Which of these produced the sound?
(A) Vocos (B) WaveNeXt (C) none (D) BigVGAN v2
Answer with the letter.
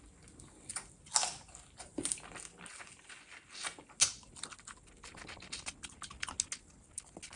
C